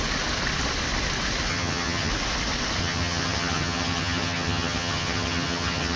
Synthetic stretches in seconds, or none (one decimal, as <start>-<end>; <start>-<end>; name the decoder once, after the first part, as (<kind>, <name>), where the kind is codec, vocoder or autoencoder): 1.5-2.1 (vocoder, HiFi-GAN); 2.8-6.0